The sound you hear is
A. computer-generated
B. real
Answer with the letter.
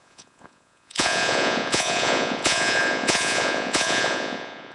A